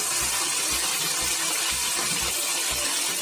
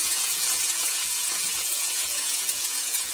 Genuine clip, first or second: first